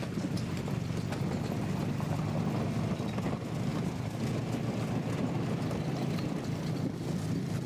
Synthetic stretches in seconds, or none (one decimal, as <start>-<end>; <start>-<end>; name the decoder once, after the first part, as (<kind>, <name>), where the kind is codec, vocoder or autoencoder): 3.7-4.2 (vocoder, BigVGAN v2)